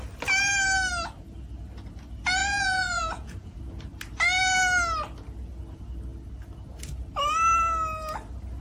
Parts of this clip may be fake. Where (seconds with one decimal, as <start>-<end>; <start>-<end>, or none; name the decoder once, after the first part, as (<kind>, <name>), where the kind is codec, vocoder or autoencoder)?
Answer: 2.4-3.6 (vocoder, Vocos)

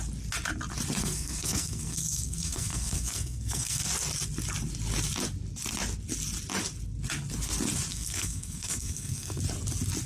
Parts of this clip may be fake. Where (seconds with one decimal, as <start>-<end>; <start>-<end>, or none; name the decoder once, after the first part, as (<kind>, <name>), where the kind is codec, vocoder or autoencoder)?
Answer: 1.0-3.9 (codec, SNAC); 7.9-9.4

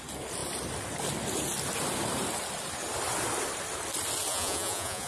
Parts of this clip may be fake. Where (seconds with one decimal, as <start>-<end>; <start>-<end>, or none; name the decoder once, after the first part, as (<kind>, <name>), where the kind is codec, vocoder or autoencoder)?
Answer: 4.3-5.1 (vocoder, Vocos)

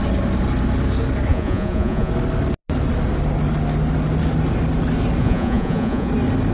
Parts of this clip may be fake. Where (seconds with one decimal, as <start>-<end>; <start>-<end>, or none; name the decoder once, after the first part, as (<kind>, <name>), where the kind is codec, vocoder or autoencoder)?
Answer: 1.3-2.1 (vocoder, Vocos); 5.2-6.1